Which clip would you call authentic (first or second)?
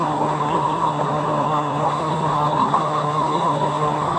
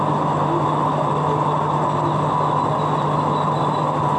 second